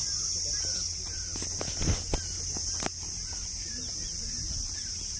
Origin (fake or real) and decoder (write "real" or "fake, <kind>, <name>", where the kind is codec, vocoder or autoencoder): real